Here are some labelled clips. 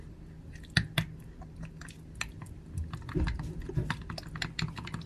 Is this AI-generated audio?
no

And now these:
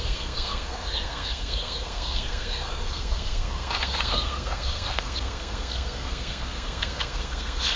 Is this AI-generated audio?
yes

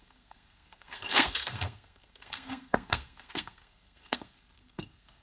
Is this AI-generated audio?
yes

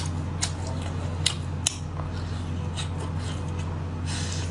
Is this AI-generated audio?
no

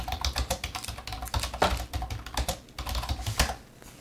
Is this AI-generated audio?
no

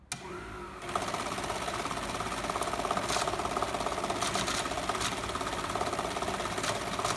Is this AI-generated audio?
no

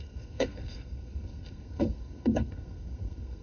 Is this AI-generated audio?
yes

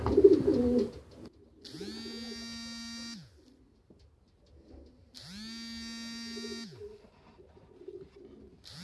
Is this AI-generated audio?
no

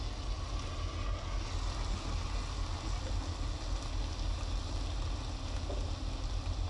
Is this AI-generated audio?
no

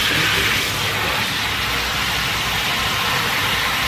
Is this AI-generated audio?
no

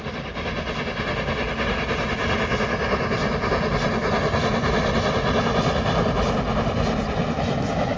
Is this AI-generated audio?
no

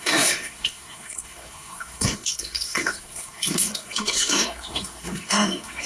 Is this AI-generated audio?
yes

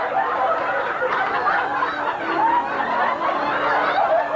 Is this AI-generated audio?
no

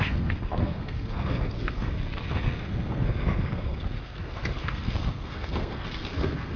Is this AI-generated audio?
yes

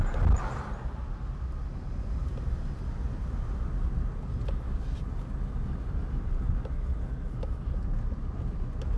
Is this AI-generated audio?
no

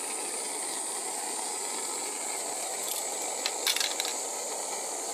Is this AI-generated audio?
no